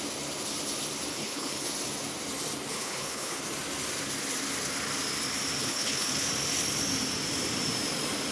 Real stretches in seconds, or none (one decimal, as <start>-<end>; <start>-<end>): 0.0-1.1; 1.7-2.7; 3.4-5.6; 6.3-8.3